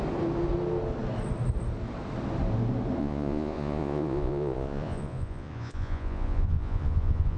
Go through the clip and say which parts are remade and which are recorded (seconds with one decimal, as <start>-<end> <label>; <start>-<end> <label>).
0.0-3.0 recorded; 3.0-7.4 remade